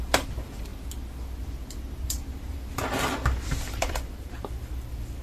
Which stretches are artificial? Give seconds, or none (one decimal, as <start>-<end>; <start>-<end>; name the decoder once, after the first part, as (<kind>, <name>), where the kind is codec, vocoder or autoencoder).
0.0-0.7 (vocoder, BigVGAN v2); 1.5-5.2